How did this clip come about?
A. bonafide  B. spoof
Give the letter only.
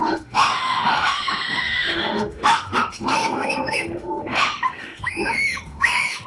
B